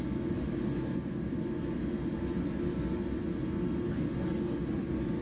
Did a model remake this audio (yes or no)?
no